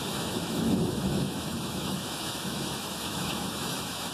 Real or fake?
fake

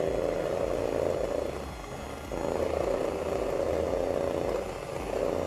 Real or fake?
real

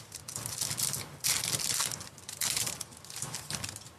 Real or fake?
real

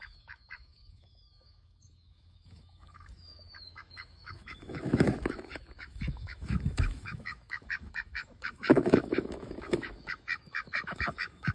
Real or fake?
fake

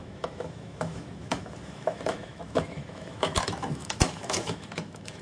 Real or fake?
fake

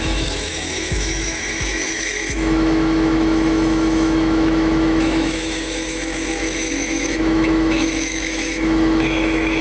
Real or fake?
fake